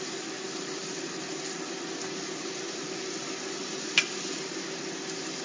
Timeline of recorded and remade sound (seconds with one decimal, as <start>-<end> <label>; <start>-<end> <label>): 0.0-5.4 recorded